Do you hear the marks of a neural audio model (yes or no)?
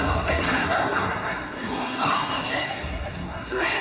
yes